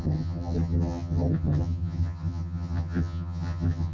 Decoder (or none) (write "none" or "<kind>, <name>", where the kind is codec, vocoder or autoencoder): vocoder, HiFi-GAN